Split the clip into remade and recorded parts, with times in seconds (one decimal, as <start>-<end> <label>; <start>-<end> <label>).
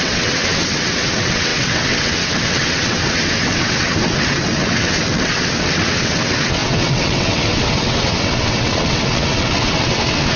0.0-10.4 remade